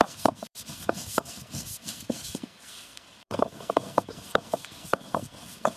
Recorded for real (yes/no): no